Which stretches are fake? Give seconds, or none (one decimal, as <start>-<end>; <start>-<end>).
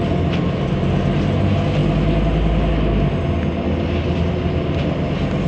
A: none